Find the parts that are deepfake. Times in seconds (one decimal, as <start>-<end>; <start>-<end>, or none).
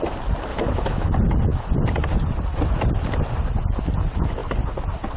0.5-1.1